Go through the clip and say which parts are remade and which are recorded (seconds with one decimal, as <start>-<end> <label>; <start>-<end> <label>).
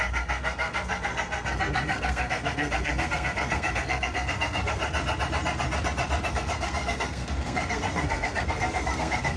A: 0.0-4.8 remade; 4.8-6.3 recorded; 6.3-9.4 remade